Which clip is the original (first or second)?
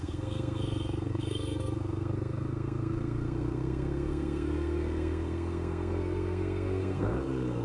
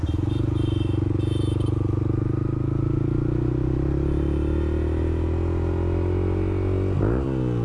second